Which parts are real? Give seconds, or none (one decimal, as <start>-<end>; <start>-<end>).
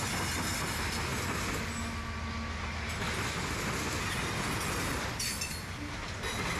0.0-6.6